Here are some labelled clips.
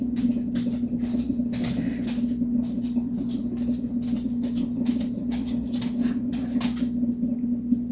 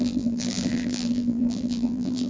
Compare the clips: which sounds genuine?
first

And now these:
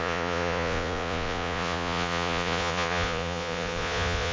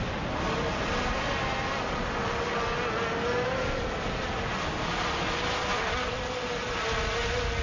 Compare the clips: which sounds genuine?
second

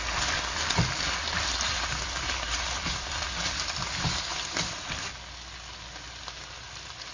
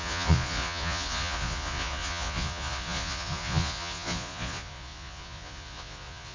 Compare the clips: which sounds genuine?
first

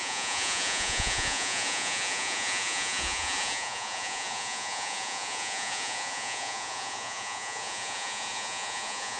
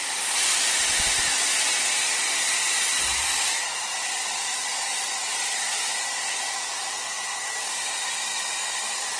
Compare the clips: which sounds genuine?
second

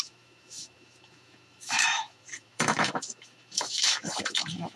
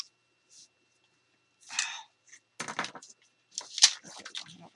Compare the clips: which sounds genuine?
second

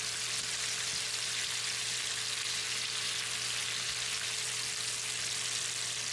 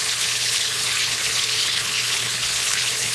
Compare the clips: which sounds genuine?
first